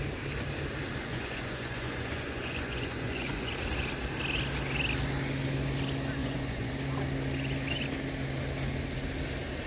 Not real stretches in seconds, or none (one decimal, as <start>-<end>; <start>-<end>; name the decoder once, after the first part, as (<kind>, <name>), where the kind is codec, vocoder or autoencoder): 1.1-3.5 (vocoder, Vocos); 6.2-6.7